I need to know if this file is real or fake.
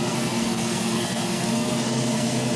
fake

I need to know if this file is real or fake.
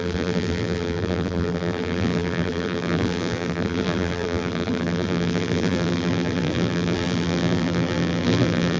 fake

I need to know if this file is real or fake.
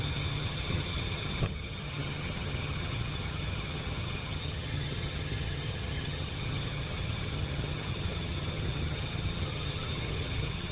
fake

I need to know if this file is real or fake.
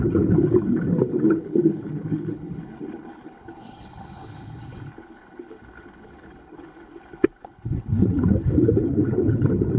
fake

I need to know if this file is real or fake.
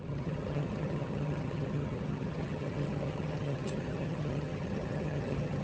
fake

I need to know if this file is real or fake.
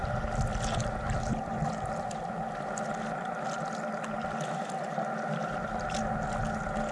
real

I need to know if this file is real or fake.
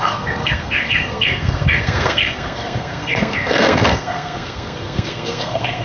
fake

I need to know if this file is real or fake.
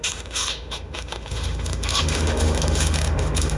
fake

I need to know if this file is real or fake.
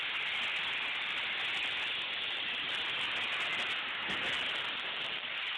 real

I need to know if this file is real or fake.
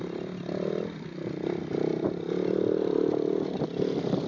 real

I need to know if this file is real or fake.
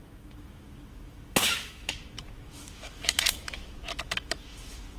fake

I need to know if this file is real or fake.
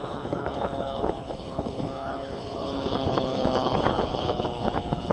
fake